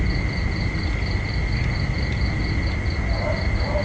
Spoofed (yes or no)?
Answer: no